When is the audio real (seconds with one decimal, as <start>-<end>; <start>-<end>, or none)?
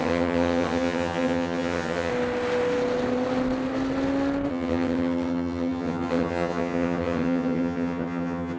2.1-4.5